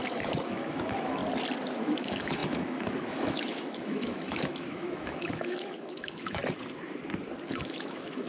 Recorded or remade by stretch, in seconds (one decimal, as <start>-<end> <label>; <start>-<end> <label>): 0.0-1.2 remade; 1.2-1.8 recorded; 1.8-6.4 remade; 6.4-7.5 recorded; 7.5-8.3 remade